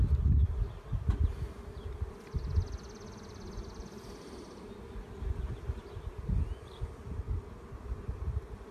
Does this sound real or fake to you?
real